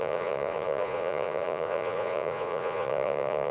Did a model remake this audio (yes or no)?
yes